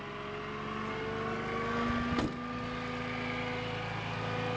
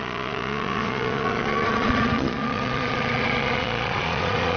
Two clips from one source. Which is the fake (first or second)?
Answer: second